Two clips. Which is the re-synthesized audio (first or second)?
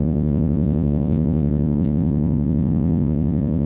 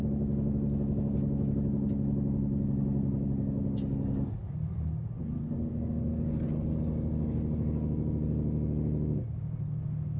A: first